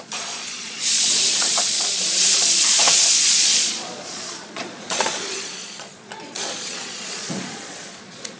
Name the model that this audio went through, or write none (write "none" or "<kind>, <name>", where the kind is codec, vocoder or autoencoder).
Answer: vocoder, Vocos